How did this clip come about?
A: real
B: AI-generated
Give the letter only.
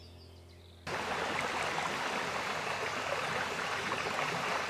A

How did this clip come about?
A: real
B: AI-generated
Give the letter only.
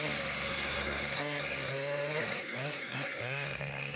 B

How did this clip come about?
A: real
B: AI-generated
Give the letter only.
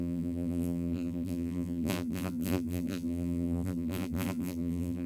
B